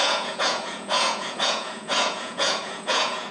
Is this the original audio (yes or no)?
no